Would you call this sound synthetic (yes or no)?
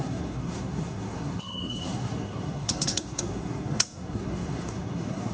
yes